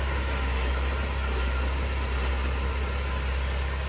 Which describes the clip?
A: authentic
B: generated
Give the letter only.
A